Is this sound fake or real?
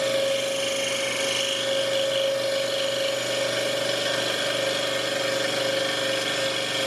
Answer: real